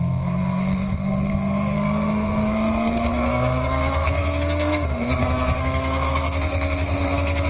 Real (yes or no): no